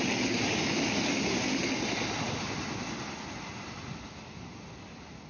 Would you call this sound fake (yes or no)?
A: no